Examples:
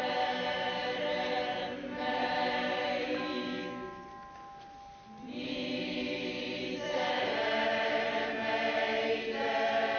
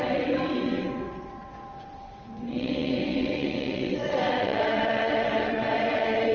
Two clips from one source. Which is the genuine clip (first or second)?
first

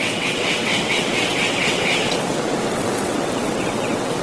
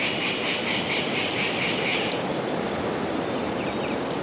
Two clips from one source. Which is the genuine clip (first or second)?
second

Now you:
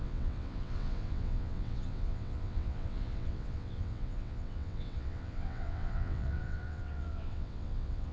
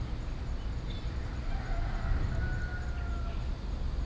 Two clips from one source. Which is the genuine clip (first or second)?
second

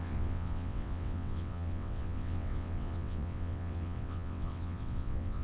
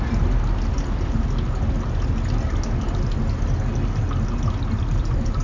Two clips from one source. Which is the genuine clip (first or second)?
second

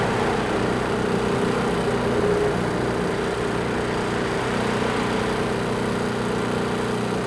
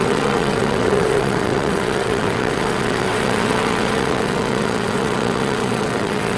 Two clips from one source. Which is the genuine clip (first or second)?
first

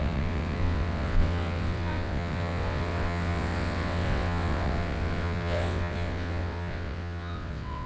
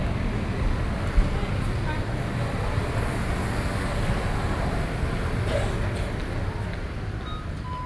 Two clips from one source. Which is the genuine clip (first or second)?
second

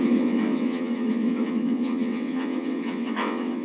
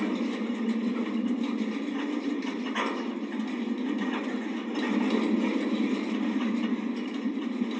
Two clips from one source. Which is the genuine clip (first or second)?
second